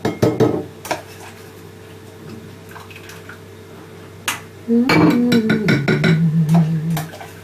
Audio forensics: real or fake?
real